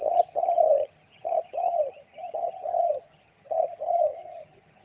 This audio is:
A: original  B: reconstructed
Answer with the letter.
B